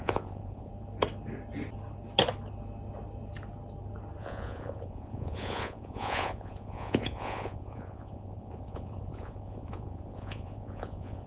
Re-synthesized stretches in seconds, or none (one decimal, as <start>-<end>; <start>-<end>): 0.0-0.7; 4.2-11.3